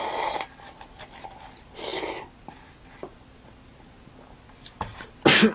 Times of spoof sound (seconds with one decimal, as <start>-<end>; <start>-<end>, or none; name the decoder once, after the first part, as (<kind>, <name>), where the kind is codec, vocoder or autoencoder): none

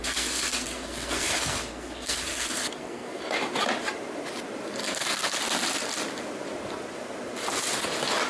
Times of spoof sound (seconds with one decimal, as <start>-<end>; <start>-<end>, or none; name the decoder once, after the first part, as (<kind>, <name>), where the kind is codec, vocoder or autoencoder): 0.0-3.2 (codec, SNAC); 4.8-5.4

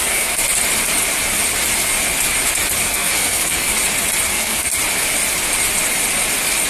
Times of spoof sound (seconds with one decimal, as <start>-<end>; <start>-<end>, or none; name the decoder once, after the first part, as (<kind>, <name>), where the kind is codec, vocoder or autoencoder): 0.0-0.4 (codec, SNAC); 2.8-3.7; 4.3-4.7

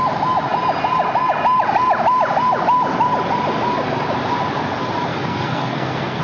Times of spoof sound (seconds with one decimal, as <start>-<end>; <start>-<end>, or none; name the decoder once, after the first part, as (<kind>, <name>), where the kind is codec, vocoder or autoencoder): 5.1-6.2 (codec, SNAC)

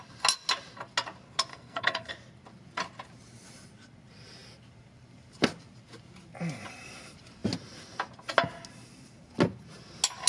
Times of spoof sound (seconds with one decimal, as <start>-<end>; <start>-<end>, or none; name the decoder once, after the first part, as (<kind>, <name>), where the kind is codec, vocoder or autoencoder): 1.5-2.1 (codec, SNAC)

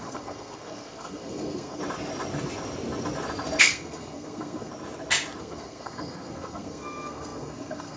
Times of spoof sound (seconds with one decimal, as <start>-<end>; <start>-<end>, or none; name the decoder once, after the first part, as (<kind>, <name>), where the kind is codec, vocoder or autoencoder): 0.0-1.8 (codec, SNAC); 3.6-4.7; 5.4-8.0